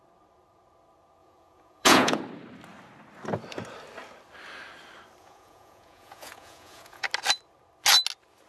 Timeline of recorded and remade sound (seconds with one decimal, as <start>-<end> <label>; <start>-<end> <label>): 0.0-1.2 recorded; 1.2-2.2 remade; 2.2-5.2 recorded; 5.2-7.1 remade; 7.1-8.5 recorded